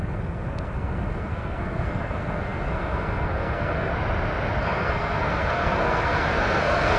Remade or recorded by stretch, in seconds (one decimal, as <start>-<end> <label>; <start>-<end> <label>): 0.0-3.9 remade; 3.9-4.6 recorded; 4.6-7.0 remade